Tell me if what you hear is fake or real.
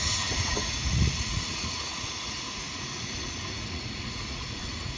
fake